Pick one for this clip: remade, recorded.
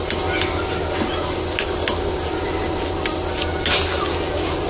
recorded